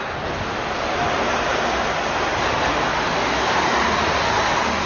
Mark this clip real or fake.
real